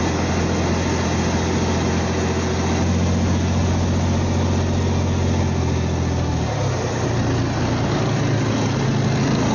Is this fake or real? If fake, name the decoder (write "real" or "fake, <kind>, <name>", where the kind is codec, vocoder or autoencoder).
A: real